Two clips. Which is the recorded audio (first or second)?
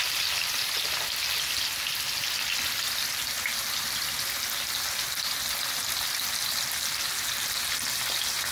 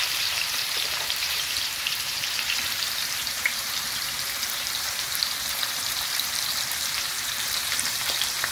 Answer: first